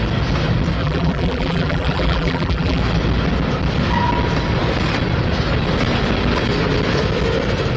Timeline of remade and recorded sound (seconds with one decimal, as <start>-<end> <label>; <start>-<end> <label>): 0.0-0.8 recorded; 0.8-2.8 remade; 2.8-7.8 recorded